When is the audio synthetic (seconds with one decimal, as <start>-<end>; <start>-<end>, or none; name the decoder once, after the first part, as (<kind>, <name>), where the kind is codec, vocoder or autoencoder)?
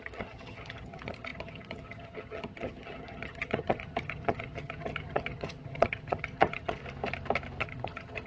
0.0-6.8 (vocoder, HiFi-GAN); 7.6-8.3